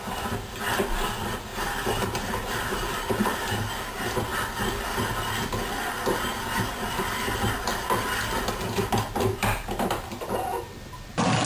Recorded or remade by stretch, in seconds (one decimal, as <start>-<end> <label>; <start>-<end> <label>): 0.0-1.5 recorded; 1.5-3.5 remade; 3.5-11.5 recorded